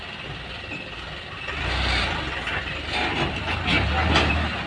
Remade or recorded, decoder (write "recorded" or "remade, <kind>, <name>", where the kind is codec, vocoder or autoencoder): recorded